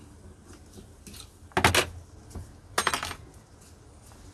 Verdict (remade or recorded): recorded